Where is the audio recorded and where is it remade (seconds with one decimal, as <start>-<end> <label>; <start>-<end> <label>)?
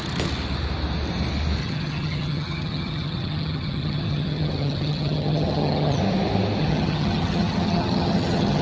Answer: 0.0-1.6 recorded; 1.6-6.0 remade; 6.0-6.6 recorded; 6.6-8.6 remade